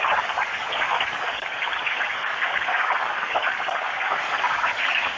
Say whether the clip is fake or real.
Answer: fake